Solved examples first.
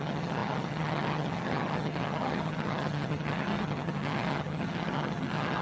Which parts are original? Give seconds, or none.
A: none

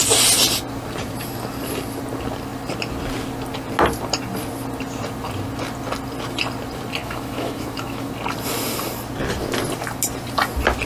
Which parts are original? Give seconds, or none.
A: 0.0-7.0; 8.1-10.9

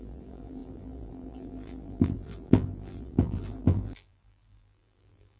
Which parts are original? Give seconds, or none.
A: none

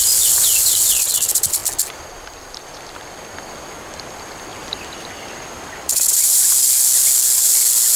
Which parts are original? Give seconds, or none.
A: 1.6-2.4

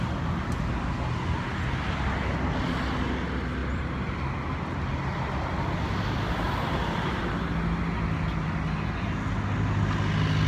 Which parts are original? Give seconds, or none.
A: 0.0-10.5

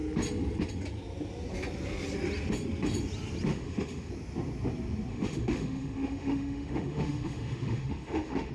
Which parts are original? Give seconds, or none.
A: 0.0-3.5; 4.1-5.1

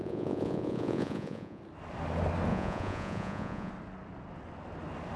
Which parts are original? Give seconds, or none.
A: 1.6-2.5; 3.7-5.2